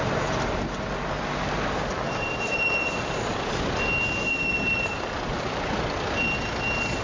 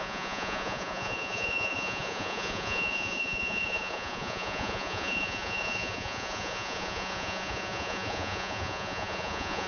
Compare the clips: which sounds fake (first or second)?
second